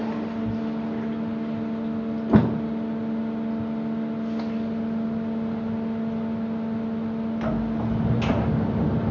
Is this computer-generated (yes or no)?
no